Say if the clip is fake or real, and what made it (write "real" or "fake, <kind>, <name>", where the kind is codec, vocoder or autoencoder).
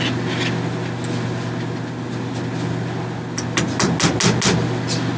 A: real